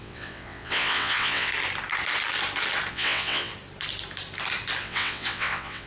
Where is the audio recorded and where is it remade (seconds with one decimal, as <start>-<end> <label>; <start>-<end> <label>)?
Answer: 0.0-1.5 remade; 1.5-2.9 recorded; 2.9-3.5 remade; 3.5-4.8 recorded; 4.8-5.9 remade